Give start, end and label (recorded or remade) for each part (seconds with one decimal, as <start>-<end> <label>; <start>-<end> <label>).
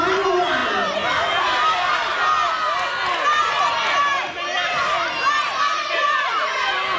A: 0.0-2.1 remade; 2.1-5.3 recorded; 5.3-7.0 remade